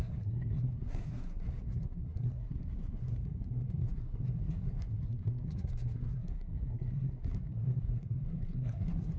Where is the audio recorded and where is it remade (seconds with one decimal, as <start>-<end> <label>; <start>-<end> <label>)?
0.0-9.2 remade

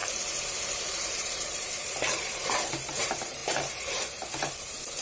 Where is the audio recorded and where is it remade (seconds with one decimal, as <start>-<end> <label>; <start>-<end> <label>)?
0.0-5.0 remade

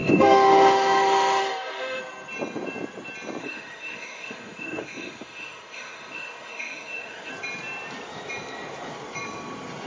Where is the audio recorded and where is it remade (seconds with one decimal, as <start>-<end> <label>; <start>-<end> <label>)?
0.0-2.0 remade; 2.0-3.4 recorded; 3.4-7.3 remade; 7.3-9.9 recorded

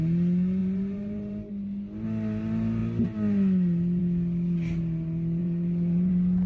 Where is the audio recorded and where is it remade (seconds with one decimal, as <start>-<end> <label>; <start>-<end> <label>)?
0.0-0.6 recorded; 0.6-1.5 remade; 1.5-5.4 recorded; 5.4-6.1 remade; 6.1-6.5 recorded

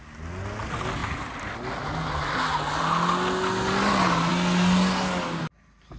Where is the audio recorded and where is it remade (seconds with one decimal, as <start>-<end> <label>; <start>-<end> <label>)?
0.0-6.0 recorded

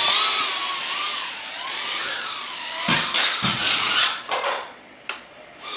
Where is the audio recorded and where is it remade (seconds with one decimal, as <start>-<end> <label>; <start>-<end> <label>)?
0.0-1.1 recorded; 1.1-2.5 remade; 2.5-3.5 recorded; 3.5-5.0 remade; 5.0-5.8 recorded

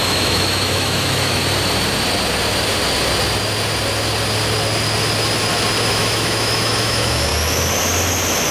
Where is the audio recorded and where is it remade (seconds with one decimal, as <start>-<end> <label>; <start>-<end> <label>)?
0.0-1.4 remade; 1.4-5.9 recorded; 5.9-7.3 remade; 7.3-8.5 recorded

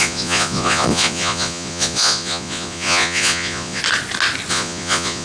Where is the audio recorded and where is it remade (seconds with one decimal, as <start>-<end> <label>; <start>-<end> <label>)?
0.0-3.8 remade; 3.8-4.5 recorded; 4.5-5.2 remade